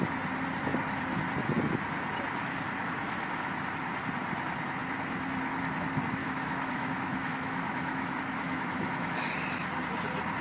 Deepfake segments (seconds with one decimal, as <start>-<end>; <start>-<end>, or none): 6.2-9.3

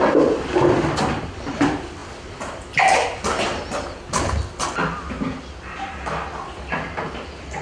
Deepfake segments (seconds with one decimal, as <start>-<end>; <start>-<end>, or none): none

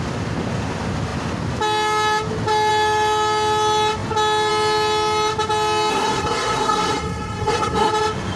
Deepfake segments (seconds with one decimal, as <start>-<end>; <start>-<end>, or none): 5.9-7.9

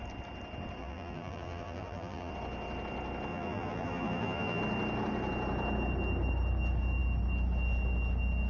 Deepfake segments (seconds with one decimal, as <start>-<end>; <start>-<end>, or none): 0.8-2.3; 3.3-4.6

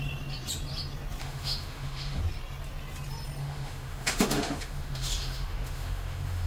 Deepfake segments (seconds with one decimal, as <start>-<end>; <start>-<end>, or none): 1.2-2.2; 3.4-6.5

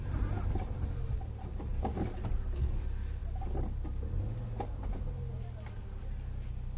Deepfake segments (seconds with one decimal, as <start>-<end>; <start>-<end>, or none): none